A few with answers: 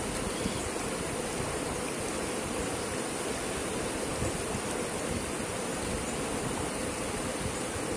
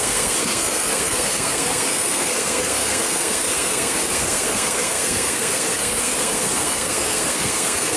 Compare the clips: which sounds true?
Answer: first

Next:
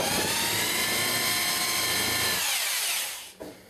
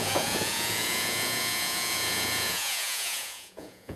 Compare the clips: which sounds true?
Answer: first